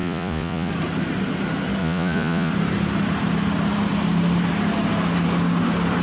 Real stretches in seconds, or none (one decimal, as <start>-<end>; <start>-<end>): 0.7-1.8; 2.5-6.0